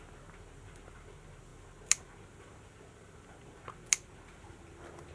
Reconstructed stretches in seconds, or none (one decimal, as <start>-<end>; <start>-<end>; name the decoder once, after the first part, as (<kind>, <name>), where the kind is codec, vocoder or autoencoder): none